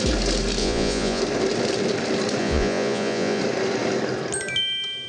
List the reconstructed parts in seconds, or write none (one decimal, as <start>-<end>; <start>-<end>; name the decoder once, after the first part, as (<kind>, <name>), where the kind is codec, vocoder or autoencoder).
0.6-1.2 (vocoder, Vocos); 2.4-3.4